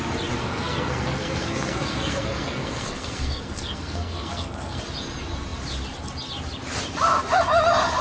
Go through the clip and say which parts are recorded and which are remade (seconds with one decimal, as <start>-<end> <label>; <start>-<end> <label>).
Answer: 0.0-0.4 recorded; 0.4-4.8 remade; 4.8-8.0 recorded